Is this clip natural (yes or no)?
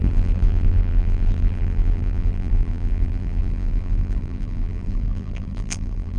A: no